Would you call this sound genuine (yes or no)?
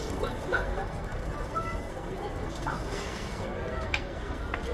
no